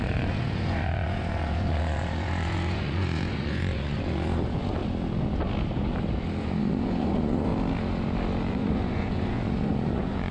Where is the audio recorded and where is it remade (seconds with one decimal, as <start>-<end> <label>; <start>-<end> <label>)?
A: 0.0-4.8 remade; 4.8-6.4 recorded; 6.4-7.5 remade; 7.5-8.5 recorded; 8.5-10.3 remade